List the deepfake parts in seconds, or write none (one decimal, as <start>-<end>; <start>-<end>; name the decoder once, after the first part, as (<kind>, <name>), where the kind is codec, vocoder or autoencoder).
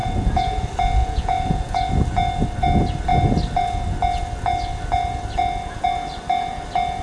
0.0-0.6 (vocoder, Vocos); 1.0-1.9